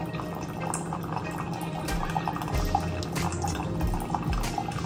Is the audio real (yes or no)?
yes